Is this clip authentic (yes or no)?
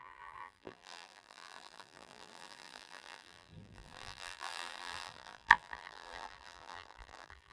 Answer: no